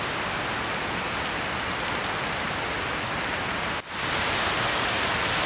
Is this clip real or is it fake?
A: real